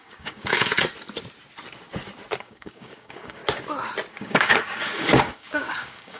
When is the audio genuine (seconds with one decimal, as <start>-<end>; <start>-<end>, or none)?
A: 0.7-2.4; 3.4-4.1